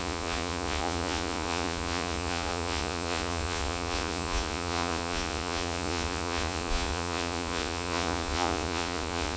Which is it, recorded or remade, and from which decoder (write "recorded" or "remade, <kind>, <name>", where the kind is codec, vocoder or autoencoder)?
remade, vocoder, Vocos